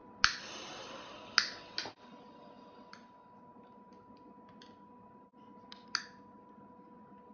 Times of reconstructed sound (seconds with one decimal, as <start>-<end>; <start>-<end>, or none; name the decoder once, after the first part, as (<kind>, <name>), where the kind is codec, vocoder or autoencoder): none